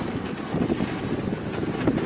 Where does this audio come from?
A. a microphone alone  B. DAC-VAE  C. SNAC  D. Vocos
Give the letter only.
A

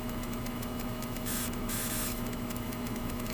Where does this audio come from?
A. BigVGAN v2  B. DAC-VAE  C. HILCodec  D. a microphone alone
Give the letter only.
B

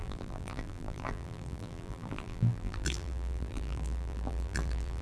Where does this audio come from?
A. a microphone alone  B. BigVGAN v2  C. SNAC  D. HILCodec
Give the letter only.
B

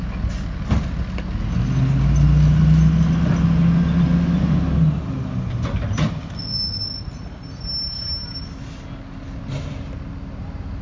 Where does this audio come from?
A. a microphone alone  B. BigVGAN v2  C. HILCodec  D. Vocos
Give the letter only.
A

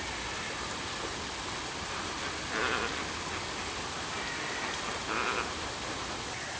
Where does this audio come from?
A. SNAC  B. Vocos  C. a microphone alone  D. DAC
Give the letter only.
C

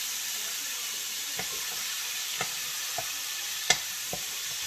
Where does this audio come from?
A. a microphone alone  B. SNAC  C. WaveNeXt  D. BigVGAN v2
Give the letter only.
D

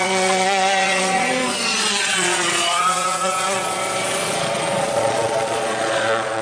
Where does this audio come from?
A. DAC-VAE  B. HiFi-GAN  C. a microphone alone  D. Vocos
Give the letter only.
D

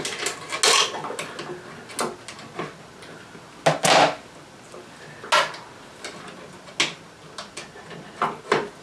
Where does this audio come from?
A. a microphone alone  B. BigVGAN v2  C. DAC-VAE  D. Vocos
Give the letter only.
A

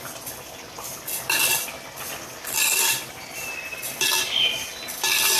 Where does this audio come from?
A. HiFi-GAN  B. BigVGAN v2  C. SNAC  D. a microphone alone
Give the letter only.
D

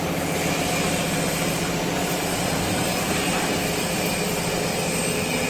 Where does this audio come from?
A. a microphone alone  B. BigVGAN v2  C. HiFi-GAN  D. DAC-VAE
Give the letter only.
A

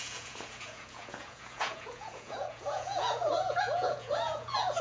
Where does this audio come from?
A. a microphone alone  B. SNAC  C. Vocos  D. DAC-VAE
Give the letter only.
C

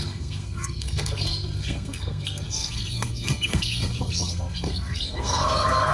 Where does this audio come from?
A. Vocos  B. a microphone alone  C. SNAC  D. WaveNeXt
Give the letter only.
C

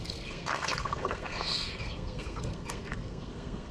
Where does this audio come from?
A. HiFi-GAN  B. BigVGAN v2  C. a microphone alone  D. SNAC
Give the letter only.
D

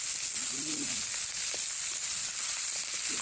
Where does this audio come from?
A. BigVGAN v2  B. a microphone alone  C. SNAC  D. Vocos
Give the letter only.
B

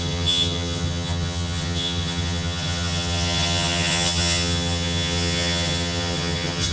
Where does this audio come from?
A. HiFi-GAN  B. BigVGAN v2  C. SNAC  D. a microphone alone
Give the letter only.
A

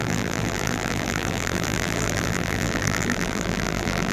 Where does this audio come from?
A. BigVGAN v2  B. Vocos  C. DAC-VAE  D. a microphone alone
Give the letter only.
A